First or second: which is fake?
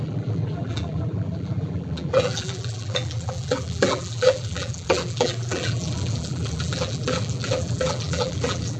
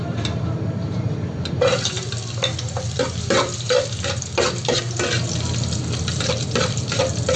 first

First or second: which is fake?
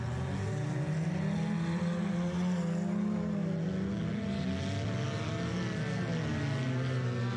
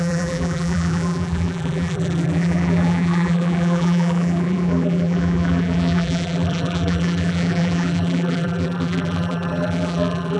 second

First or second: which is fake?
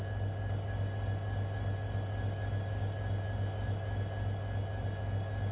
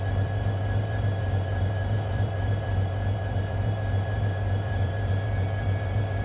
second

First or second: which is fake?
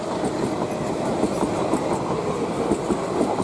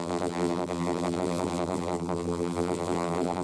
second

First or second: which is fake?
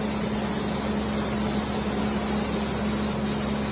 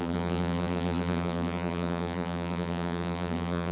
second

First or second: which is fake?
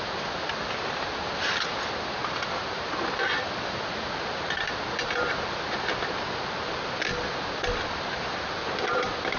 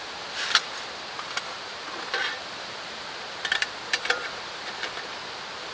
second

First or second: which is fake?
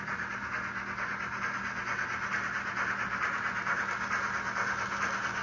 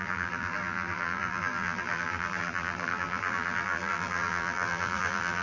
second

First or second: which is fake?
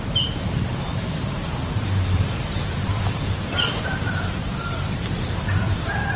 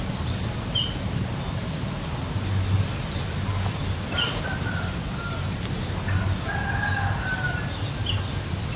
first